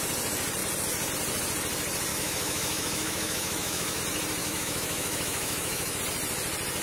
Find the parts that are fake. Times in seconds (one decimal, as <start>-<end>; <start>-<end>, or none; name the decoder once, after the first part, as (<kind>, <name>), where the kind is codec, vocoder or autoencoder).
2.1-4.0 (autoencoder, DAC-VAE); 4.4-6.0